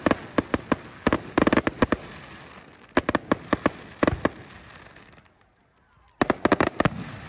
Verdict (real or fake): real